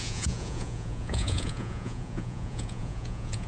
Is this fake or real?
fake